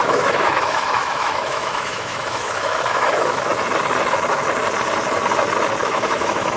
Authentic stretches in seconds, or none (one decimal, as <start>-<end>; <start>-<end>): 3.5-5.8